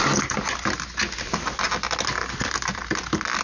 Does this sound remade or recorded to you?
recorded